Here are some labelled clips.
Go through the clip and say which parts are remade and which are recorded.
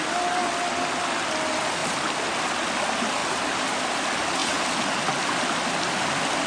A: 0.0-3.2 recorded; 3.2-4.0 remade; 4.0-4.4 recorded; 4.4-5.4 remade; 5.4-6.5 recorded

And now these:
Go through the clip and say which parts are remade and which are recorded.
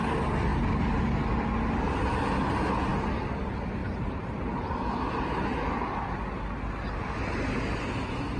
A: 0.0-3.8 recorded; 3.8-5.0 remade; 5.0-8.4 recorded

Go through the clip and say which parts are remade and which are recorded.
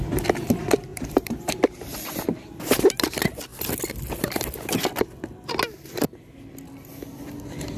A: 0.0-0.9 recorded; 0.9-2.5 remade; 2.5-7.8 recorded